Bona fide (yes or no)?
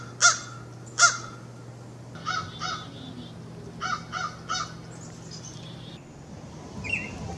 yes